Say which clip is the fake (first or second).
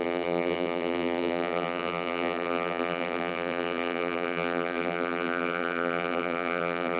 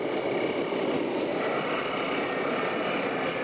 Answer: first